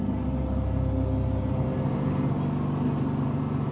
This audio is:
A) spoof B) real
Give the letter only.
B